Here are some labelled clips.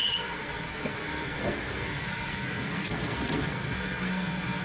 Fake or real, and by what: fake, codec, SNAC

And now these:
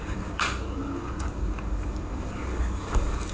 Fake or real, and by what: fake, codec, DAC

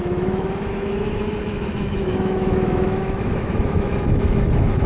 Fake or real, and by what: fake, autoencoder, DAC-VAE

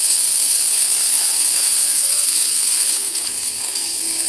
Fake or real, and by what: fake, codec, SNAC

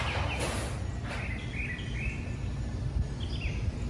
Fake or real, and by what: real